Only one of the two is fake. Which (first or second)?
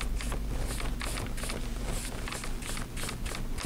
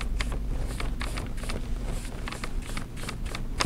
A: second